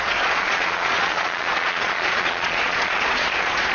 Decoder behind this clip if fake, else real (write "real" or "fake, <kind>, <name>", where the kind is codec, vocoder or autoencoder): fake, vocoder, Vocos